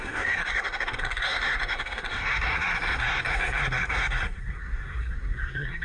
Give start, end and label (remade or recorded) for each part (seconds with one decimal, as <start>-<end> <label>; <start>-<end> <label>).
0.0-5.8 remade